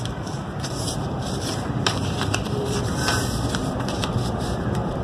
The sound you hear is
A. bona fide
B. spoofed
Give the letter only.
B